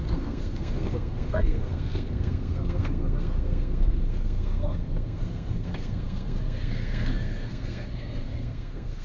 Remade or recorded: remade